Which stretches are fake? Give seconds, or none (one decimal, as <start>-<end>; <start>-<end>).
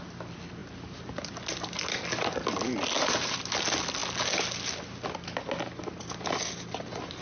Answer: none